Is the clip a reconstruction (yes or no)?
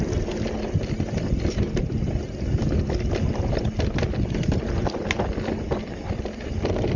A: no